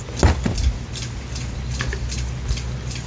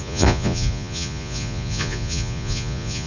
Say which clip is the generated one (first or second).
second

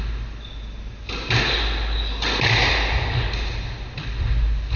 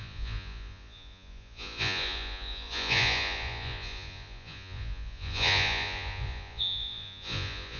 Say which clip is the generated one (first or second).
second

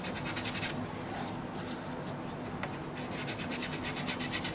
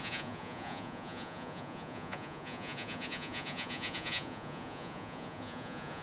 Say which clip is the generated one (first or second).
second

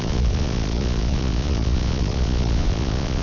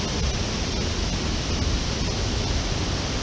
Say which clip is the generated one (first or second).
first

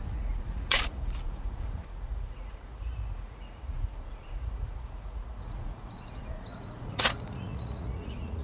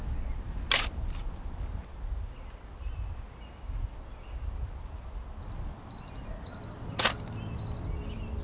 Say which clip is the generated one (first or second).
first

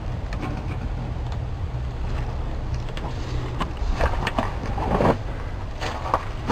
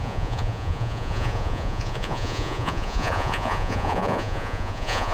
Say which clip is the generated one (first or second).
second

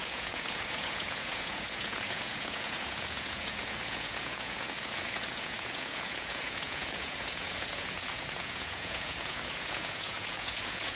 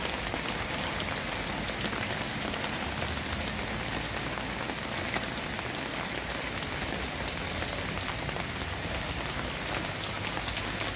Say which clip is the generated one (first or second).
first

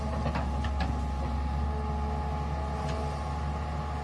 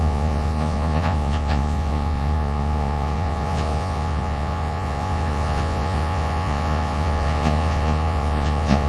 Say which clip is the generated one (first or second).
second